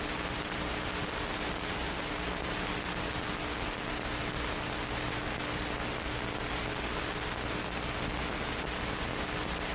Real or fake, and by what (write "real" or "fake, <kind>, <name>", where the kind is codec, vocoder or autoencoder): real